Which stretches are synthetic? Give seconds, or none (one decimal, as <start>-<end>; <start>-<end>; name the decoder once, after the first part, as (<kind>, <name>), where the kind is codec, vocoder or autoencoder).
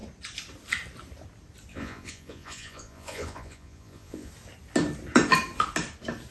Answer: 1.7-4.3 (vocoder, Vocos)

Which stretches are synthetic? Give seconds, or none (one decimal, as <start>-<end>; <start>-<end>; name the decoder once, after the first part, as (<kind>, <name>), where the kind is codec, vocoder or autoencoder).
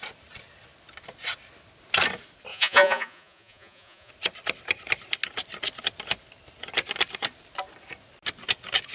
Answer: 2.5-4.1 (vocoder, Vocos)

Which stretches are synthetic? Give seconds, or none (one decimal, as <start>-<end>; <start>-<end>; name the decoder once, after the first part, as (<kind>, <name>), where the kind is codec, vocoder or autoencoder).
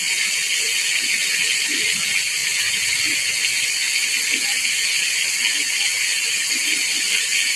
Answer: none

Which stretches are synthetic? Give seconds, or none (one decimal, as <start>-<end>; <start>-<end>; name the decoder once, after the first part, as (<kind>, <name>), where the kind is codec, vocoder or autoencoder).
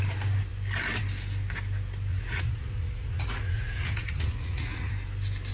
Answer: 2.1-4.9 (vocoder, Vocos)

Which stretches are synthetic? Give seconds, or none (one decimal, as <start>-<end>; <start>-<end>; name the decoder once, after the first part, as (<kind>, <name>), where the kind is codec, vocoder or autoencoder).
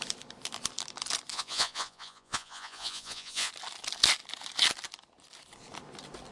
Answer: 1.3-3.5 (vocoder, Vocos)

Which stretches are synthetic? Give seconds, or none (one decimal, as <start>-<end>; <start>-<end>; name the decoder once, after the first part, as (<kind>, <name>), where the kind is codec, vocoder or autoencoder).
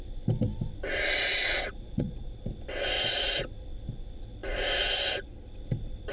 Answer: 1.3-2.4 (vocoder, Vocos)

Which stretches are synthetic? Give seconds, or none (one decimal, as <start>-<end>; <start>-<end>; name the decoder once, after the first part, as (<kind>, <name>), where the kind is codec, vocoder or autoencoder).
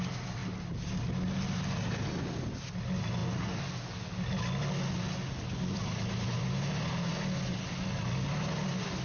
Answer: none